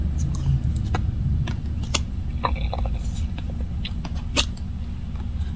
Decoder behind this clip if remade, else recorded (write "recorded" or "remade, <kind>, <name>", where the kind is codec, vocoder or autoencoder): recorded